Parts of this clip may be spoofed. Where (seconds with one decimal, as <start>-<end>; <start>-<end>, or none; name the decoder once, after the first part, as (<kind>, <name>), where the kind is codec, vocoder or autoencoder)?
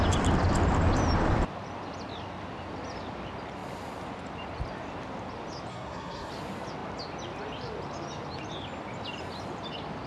5.7-6.3 (codec, SNAC)